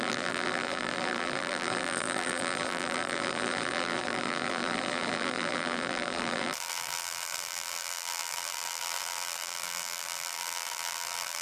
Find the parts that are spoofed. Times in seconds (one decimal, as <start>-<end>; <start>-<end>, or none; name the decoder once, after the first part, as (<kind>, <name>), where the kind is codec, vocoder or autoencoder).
0.0-11.4 (vocoder, BigVGAN v2)